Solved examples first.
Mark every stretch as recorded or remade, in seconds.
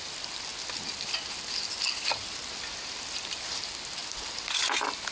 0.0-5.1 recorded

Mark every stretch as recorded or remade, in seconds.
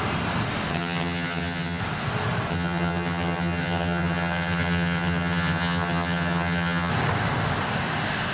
0.0-0.7 recorded; 0.7-1.8 remade; 1.8-2.5 recorded; 2.5-6.9 remade; 6.9-8.3 recorded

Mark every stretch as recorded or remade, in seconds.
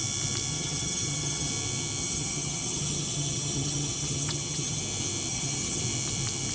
0.0-0.5 recorded; 0.5-1.5 remade; 1.5-2.0 recorded; 2.0-4.8 remade; 4.8-5.3 recorded; 5.3-5.8 remade; 5.8-6.5 recorded